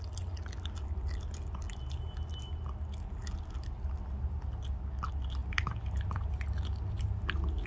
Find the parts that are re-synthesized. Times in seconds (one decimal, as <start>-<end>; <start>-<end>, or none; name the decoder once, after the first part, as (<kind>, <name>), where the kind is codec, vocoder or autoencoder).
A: none